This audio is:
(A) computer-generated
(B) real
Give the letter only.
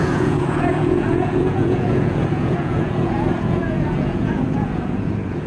A